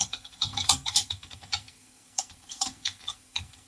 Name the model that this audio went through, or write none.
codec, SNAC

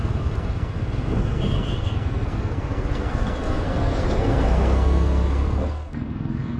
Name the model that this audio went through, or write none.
codec, SNAC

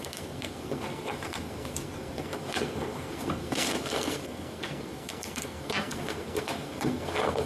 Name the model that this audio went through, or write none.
codec, SNAC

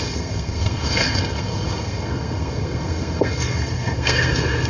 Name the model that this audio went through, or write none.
codec, SNAC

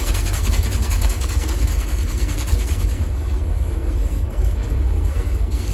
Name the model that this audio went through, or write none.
codec, SNAC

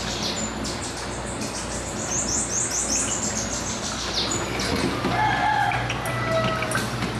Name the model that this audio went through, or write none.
none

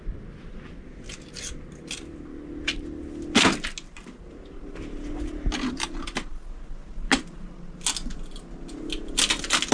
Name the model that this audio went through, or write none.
none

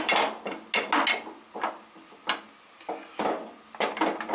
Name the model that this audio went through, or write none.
none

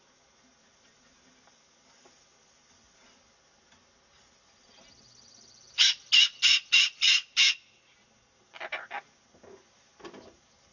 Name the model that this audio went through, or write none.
none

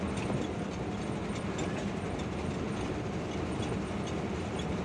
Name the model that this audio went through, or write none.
none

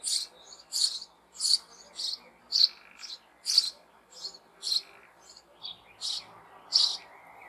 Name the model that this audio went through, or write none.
none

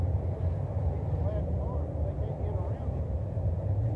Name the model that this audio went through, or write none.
none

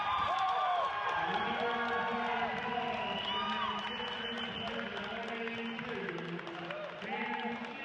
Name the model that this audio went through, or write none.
none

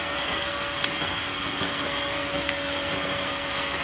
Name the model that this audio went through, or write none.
codec, SNAC